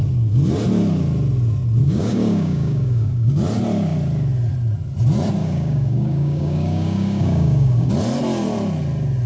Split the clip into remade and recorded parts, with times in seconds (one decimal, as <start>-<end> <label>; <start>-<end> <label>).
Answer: 0.0-1.8 recorded; 1.8-3.4 remade; 3.4-5.4 recorded; 5.4-7.9 remade; 7.9-9.3 recorded